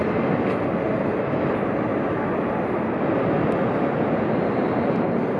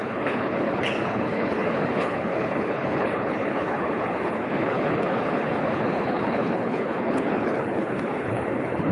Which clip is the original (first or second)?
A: first